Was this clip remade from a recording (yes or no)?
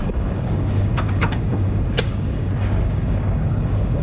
yes